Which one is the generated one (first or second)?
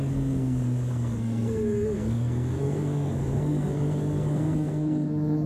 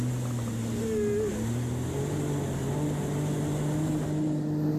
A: first